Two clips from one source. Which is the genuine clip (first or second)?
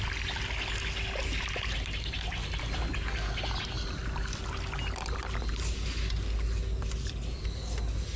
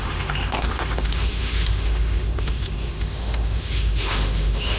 first